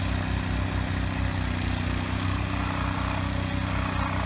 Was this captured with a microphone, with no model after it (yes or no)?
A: yes